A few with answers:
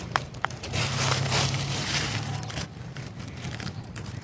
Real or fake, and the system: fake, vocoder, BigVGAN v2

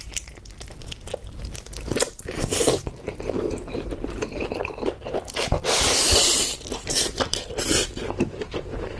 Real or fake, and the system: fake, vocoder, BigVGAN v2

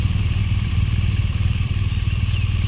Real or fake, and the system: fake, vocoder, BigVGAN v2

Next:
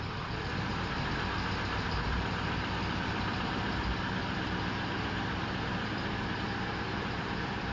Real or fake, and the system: fake, vocoder, BigVGAN v2